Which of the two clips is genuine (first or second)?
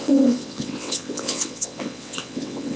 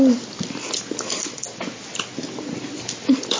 second